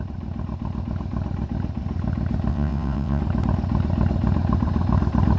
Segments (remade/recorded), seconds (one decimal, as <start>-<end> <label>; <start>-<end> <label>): 0.0-2.5 recorded; 2.5-3.2 remade; 3.2-5.4 recorded